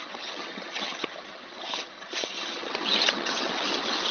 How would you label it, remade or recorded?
remade